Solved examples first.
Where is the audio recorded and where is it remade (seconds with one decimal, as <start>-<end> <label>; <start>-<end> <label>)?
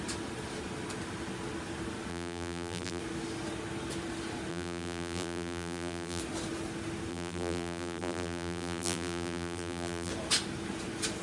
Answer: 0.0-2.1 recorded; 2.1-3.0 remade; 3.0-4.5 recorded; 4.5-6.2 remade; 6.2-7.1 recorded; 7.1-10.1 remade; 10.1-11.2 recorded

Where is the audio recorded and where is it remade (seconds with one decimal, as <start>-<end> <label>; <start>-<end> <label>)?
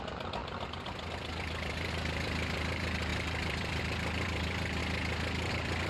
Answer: 0.0-4.8 remade; 4.8-5.5 recorded; 5.5-5.9 remade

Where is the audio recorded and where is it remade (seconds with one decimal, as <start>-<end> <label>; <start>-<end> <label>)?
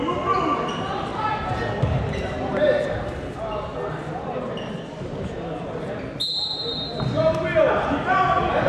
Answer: 0.0-8.7 recorded